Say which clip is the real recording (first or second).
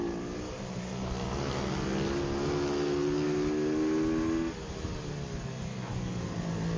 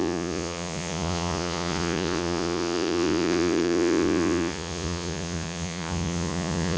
first